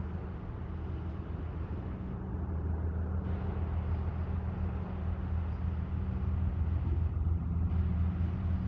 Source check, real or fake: real